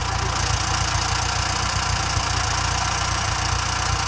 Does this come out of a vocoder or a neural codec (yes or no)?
no